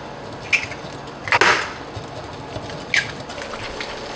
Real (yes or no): yes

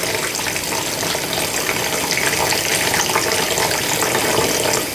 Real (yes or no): yes